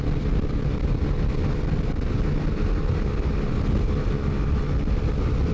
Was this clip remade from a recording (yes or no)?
no